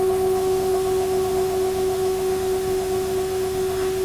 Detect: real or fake fake